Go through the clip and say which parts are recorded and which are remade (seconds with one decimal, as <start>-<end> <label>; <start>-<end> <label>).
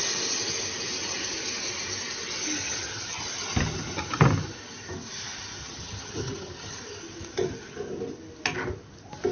0.0-2.6 recorded; 2.6-3.2 remade; 3.2-5.6 recorded; 5.6-6.8 remade; 6.8-9.3 recorded